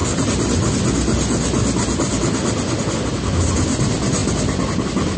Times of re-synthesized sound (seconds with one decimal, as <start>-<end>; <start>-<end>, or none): none